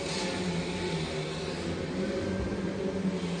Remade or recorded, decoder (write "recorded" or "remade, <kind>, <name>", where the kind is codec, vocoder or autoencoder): recorded